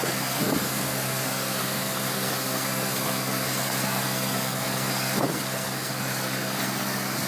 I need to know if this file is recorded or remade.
remade